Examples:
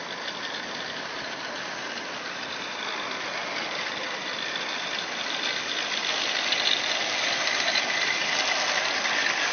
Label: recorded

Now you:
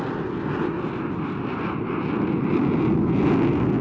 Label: recorded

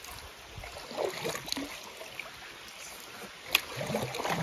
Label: recorded